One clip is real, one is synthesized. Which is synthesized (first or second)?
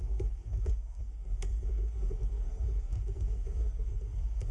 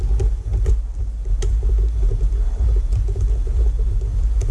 first